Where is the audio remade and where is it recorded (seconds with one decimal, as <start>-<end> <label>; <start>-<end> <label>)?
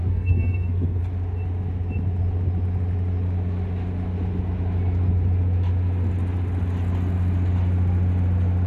0.0-1.0 remade; 1.0-8.7 recorded